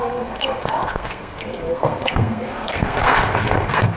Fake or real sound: fake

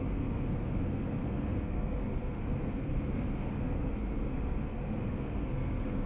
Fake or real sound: fake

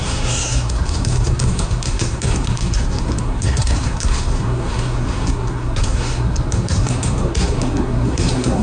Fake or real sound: fake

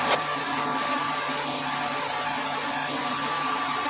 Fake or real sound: real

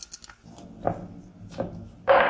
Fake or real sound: real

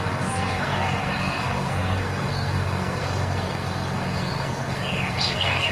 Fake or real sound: fake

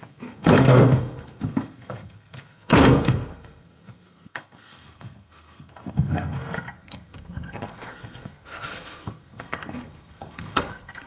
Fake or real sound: fake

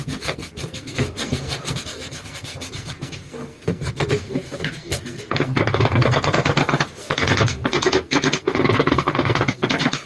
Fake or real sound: fake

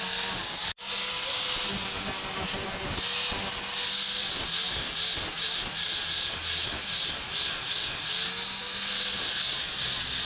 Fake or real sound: real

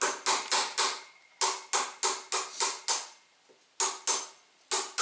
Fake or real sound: real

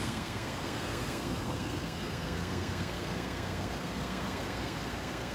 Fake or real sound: fake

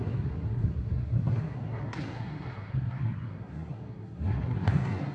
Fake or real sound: fake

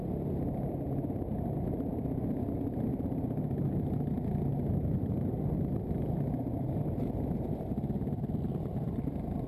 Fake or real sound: real